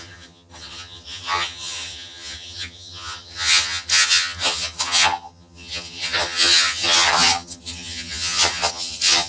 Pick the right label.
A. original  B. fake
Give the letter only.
B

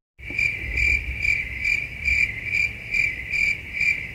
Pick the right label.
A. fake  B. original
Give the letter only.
B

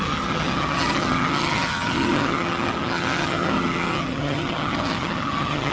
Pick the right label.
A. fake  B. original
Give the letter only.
A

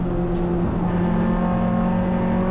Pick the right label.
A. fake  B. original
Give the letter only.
B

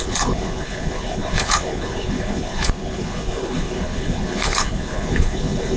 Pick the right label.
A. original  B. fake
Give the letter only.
B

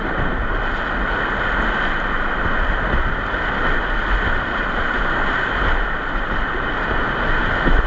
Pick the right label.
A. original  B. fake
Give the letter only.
A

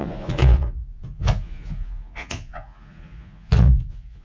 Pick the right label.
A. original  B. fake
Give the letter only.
B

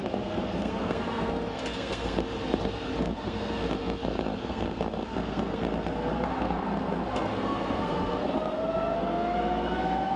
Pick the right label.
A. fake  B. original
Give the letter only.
A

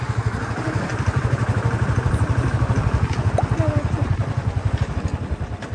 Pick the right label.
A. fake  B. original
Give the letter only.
B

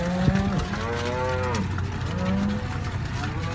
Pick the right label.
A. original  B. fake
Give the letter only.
A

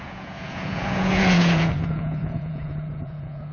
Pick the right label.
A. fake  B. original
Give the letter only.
A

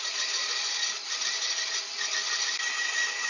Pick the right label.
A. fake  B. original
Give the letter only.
B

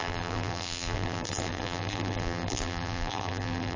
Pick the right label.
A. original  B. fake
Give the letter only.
B